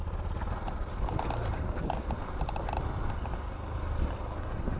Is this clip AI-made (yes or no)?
no